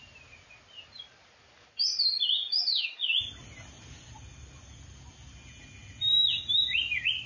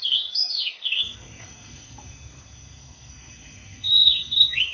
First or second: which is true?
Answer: first